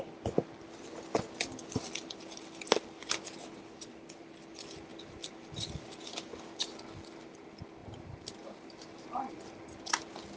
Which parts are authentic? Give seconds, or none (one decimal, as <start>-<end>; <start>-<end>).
0.0-4.9; 5.4-7.8; 9.4-10.4